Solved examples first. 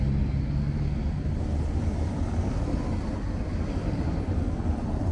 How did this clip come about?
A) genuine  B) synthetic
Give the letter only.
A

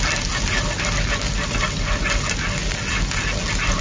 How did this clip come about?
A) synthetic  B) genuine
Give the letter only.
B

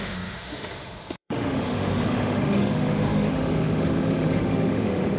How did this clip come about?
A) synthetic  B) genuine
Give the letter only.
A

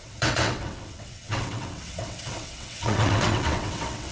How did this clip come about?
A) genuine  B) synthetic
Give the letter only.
B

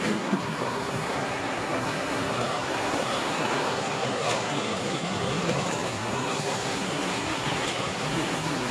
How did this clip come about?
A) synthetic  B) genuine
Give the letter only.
A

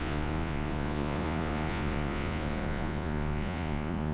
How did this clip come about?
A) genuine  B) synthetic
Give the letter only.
B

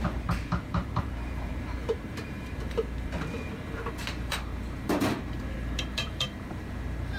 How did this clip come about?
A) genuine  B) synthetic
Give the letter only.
B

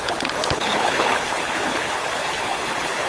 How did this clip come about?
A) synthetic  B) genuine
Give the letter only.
A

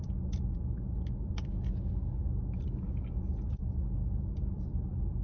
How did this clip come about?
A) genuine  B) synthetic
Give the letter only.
B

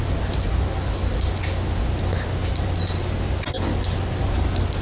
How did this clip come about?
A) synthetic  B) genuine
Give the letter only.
B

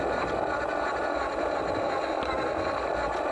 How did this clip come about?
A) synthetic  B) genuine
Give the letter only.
B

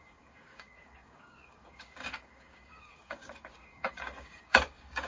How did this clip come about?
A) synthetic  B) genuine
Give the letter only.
A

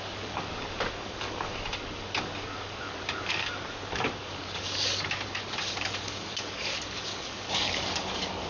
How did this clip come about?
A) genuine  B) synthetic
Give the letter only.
B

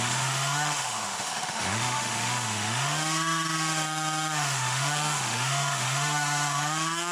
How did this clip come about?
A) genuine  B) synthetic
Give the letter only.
B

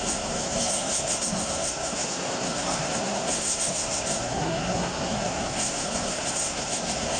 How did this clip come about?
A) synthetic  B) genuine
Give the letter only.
A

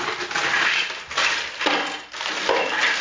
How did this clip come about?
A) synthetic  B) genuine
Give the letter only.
B